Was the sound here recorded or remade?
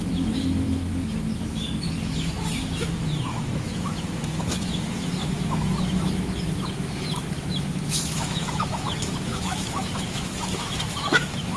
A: remade